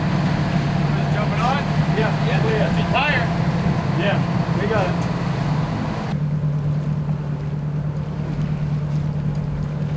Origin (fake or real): real